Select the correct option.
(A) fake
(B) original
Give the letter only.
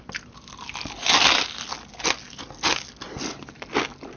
B